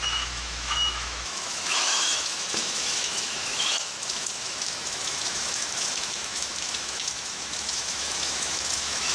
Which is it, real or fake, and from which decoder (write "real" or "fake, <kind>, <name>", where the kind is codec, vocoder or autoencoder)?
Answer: fake, autoencoder, DAC-VAE